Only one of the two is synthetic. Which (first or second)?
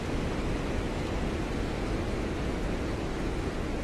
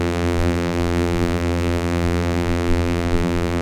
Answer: second